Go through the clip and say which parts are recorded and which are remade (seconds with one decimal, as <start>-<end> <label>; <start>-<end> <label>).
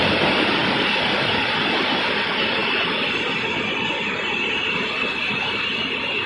0.0-6.3 recorded